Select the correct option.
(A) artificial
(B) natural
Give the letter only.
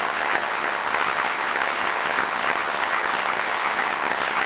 A